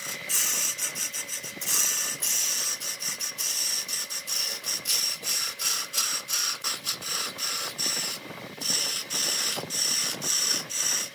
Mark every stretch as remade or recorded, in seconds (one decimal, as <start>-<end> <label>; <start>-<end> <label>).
0.0-11.1 recorded